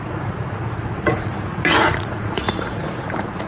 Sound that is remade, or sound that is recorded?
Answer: remade